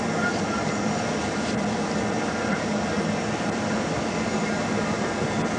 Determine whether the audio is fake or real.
real